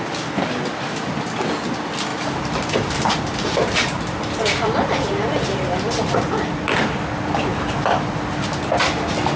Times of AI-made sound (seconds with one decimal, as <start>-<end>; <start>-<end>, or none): 2.1-6.1; 7.5-8.1